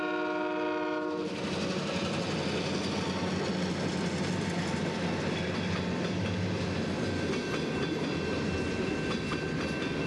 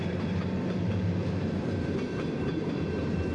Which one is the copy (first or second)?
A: second